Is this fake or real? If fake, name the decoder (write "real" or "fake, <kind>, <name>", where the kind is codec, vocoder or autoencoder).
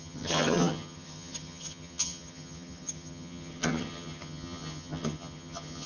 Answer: fake, vocoder, HiFi-GAN